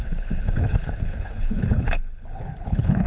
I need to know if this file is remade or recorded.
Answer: remade